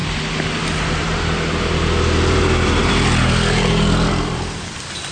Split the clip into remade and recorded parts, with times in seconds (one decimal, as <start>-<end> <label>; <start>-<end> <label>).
0.0-2.2 recorded; 2.2-5.1 remade